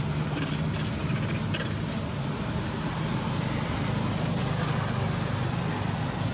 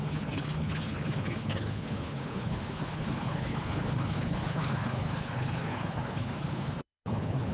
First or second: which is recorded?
first